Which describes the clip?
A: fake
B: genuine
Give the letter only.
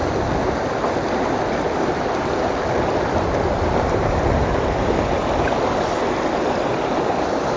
B